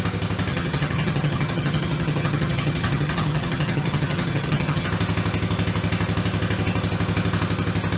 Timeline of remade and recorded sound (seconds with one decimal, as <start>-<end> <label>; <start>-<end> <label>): 0.0-0.5 recorded; 0.5-4.9 remade; 4.9-8.0 recorded